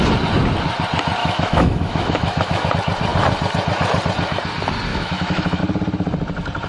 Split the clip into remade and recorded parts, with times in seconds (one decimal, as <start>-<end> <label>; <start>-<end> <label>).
0.0-1.2 recorded; 1.2-2.7 remade; 2.7-4.9 recorded; 4.9-5.6 remade; 5.6-6.7 recorded